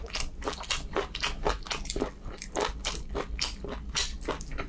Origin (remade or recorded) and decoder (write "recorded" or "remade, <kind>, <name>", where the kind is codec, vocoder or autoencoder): recorded